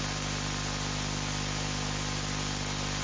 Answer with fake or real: real